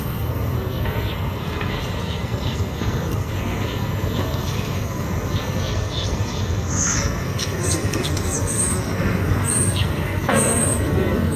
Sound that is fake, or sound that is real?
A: fake